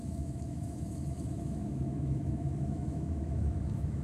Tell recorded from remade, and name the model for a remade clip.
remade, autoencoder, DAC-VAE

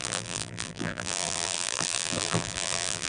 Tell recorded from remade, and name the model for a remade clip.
remade, vocoder, BigVGAN v2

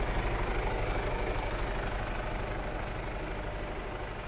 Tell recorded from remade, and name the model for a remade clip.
recorded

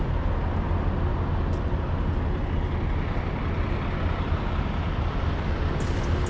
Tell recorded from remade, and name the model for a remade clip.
recorded